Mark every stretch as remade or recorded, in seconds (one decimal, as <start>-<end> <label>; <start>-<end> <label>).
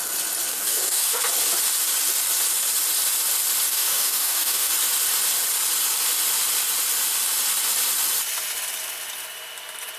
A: 0.0-0.5 recorded; 0.5-1.2 remade; 1.2-3.7 recorded; 3.7-4.7 remade; 4.7-10.0 recorded